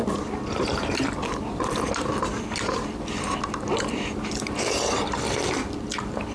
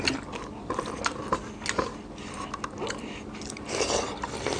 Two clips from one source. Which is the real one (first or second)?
second